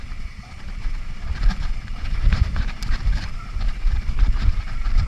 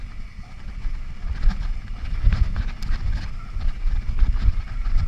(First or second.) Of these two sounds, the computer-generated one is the first